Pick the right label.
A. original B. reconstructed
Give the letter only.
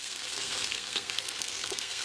B